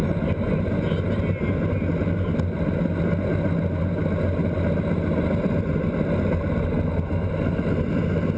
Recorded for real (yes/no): yes